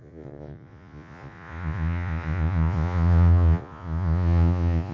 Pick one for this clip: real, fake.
fake